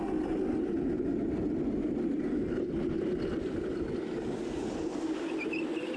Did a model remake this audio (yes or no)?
no